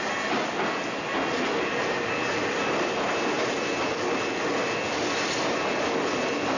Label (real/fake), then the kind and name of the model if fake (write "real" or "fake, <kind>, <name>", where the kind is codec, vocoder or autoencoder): real